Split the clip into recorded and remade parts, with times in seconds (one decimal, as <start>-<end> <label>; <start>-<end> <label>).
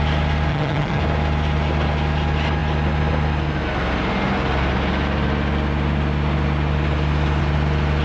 0.0-0.5 recorded; 0.5-1.0 remade; 1.0-8.0 recorded